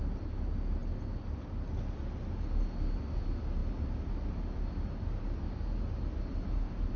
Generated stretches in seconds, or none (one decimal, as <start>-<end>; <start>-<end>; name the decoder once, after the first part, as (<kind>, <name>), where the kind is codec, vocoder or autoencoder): none